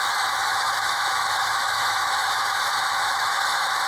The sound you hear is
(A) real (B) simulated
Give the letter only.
B